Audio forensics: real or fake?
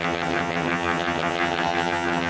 fake